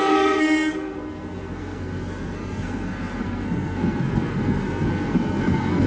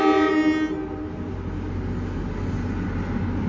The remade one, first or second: first